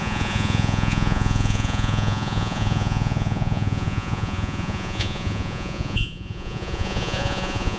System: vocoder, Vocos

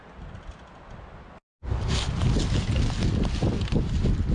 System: none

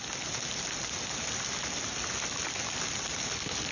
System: none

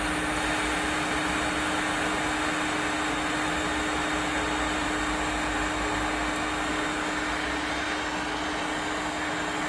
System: none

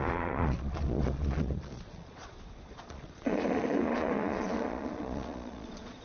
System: vocoder, Vocos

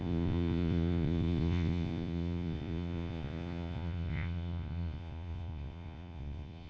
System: vocoder, Vocos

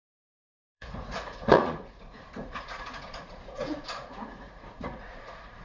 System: vocoder, Vocos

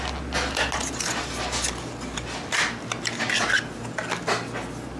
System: none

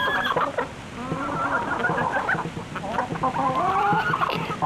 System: none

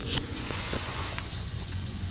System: vocoder, Vocos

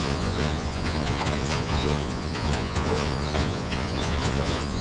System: vocoder, Vocos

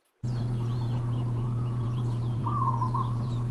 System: vocoder, Vocos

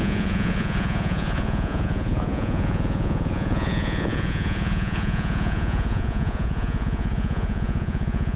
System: vocoder, Vocos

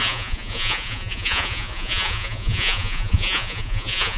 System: vocoder, Vocos